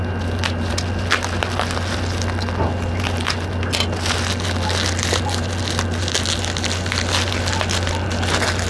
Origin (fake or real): real